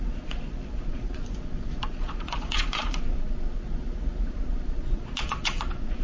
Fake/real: fake